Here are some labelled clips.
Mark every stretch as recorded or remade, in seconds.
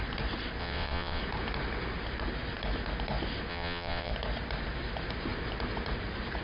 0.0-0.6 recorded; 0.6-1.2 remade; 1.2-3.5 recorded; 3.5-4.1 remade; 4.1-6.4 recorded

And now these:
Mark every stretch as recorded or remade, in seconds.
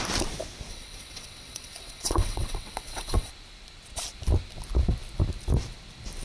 0.0-0.7 recorded; 0.7-3.3 remade; 3.3-6.2 recorded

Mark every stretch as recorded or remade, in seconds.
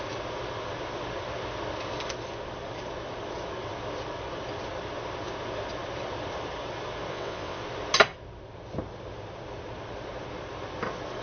0.0-7.1 recorded; 7.1-7.6 remade; 7.6-11.2 recorded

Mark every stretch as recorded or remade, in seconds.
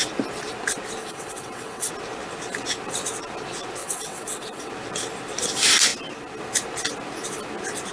0.0-1.0 recorded; 1.0-1.9 remade; 1.9-3.8 recorded; 3.8-4.7 remade; 4.7-7.9 recorded